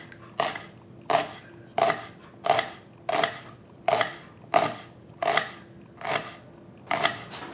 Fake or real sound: real